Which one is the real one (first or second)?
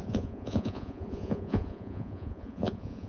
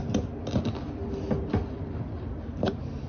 second